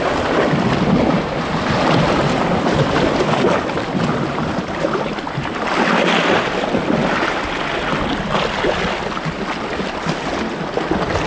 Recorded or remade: recorded